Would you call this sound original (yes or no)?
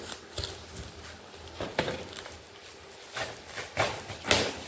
yes